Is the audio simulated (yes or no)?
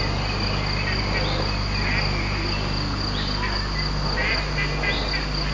no